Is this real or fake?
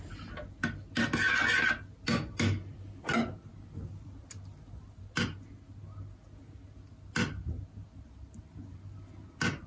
real